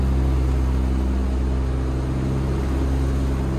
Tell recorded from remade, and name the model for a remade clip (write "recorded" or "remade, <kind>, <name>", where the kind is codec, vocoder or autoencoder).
recorded